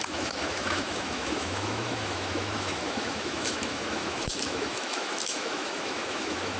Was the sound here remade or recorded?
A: remade